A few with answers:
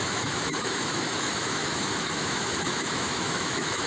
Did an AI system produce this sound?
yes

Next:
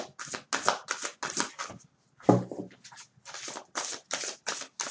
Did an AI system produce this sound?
no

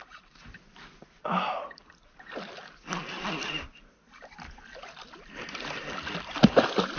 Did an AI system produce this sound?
no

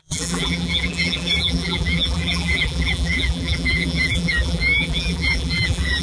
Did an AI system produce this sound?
yes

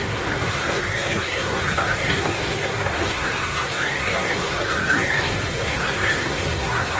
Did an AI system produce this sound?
yes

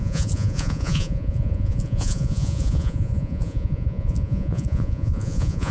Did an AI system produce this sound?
yes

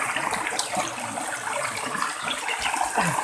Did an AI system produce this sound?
no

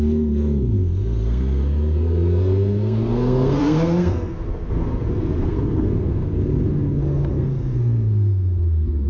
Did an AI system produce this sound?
yes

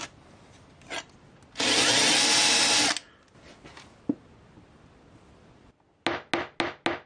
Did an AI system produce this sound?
no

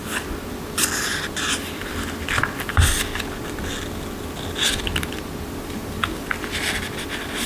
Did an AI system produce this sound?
no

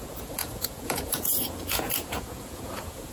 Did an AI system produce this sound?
yes